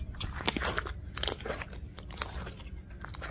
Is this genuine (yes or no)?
yes